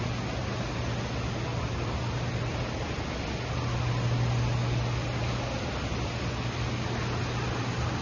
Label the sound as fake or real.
real